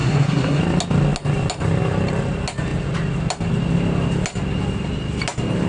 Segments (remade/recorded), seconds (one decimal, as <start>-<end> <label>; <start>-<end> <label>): 0.0-0.6 remade; 0.6-5.7 recorded